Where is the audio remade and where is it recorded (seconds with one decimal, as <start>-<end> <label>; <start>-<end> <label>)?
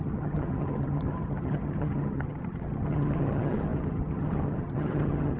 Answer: 0.0-5.4 remade